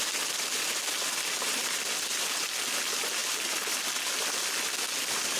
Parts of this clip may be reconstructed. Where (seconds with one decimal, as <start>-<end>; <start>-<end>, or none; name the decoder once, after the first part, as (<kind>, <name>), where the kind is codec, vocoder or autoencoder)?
none